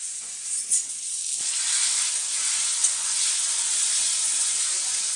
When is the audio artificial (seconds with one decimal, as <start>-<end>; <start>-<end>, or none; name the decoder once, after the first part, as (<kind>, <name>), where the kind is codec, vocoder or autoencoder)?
0.0-1.2 (vocoder, Vocos); 2.3-5.2